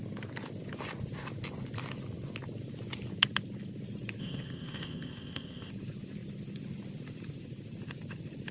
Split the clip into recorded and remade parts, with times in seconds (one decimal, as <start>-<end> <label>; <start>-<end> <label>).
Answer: 0.0-4.2 recorded; 4.2-5.7 remade; 5.7-8.5 recorded